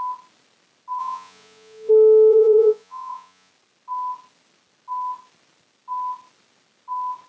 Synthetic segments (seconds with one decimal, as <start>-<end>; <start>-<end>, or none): 1.0-1.9; 2.3-3.5